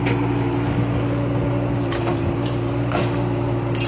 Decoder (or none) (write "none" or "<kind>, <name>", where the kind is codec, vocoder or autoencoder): none